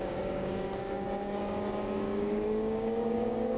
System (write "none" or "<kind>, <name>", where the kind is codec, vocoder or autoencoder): codec, DAC